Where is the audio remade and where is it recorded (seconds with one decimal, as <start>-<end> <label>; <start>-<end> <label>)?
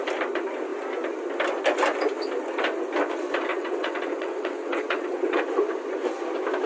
0.0-3.5 recorded; 3.5-5.4 remade; 5.4-6.7 recorded